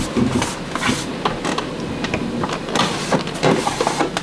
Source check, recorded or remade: recorded